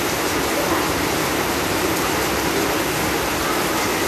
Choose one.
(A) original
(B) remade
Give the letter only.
A